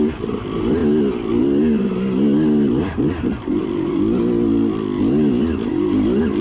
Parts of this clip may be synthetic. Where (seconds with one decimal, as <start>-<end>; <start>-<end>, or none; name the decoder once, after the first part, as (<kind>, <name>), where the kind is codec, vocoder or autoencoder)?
3.6-4.2 (vocoder, BigVGAN v2)